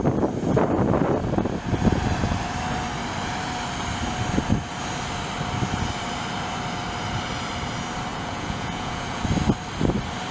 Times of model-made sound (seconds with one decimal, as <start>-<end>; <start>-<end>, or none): 8.1-9.2